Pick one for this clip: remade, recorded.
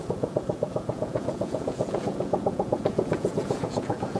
remade